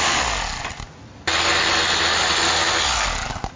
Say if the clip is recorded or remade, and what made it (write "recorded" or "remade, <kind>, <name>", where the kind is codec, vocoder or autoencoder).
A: recorded